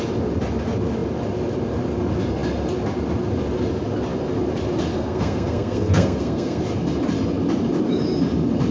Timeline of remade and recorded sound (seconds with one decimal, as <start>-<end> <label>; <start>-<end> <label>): 0.0-4.9 recorded; 4.9-6.6 remade; 6.6-8.7 recorded